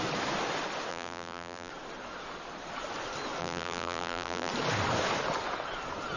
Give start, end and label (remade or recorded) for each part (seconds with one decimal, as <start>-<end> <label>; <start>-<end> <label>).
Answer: 0.0-0.9 recorded; 0.9-1.7 remade; 1.7-3.4 recorded; 3.4-4.5 remade; 4.5-6.2 recorded